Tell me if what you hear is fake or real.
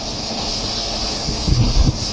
fake